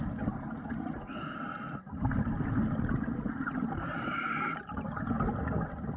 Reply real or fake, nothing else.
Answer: real